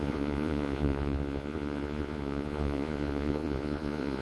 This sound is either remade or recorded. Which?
remade